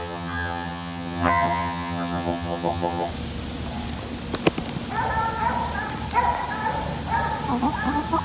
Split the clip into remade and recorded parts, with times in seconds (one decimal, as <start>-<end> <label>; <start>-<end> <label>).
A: 0.0-3.1 remade; 3.1-8.2 recorded